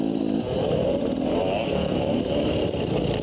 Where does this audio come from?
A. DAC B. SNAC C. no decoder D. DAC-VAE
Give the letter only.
C